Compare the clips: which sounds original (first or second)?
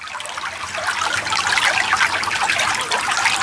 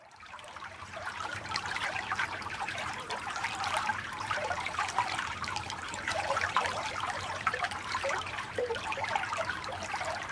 first